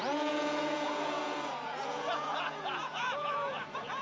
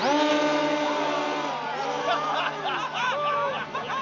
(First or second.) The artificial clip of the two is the first